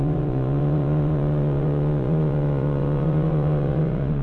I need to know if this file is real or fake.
fake